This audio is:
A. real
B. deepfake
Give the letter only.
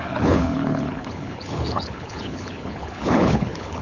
B